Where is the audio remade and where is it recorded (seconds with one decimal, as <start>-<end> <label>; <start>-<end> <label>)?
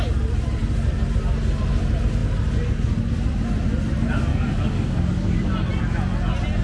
0.0-4.3 recorded; 4.3-5.5 remade; 5.5-6.6 recorded